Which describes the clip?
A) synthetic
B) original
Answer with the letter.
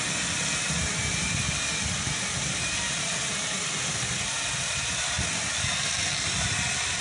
B